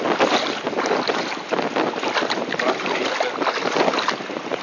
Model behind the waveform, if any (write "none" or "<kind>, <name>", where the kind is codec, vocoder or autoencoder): none